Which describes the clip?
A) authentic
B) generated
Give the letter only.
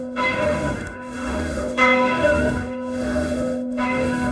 B